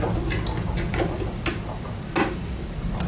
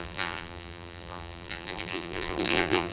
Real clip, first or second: first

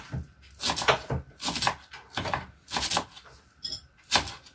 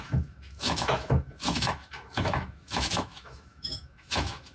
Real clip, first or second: first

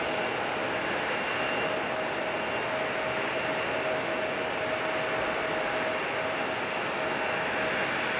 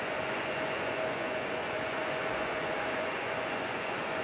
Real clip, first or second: first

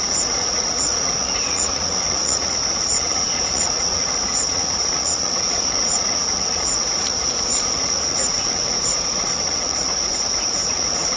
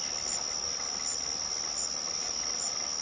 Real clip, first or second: second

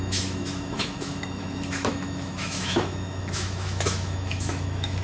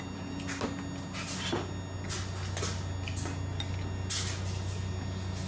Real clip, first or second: second